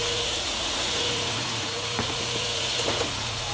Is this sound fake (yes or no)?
yes